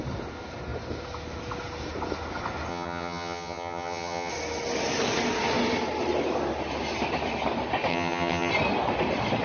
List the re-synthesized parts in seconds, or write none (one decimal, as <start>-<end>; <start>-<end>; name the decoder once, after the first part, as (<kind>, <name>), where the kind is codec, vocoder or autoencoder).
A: 2.7-4.3 (vocoder, HiFi-GAN); 7.9-8.5